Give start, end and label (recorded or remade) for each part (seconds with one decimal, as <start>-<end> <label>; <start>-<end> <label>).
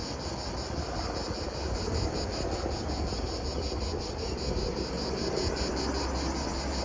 0.0-6.8 recorded